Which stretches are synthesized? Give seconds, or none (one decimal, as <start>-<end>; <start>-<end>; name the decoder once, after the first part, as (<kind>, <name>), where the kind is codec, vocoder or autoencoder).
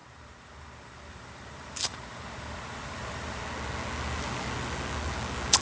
0.0-3.4 (vocoder, BigVGAN v2)